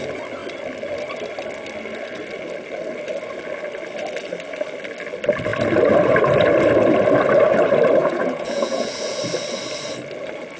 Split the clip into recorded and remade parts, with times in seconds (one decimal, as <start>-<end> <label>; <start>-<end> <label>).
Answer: 0.0-8.0 recorded; 8.0-9.2 remade; 9.2-10.6 recorded